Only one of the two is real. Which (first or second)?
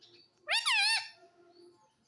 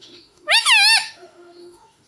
first